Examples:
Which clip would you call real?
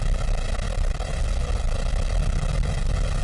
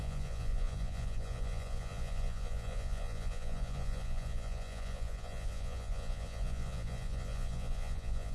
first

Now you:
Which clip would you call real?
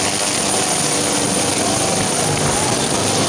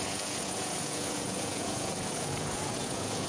first